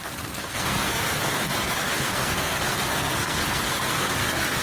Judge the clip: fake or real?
fake